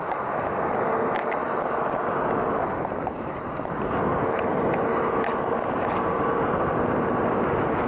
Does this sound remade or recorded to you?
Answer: recorded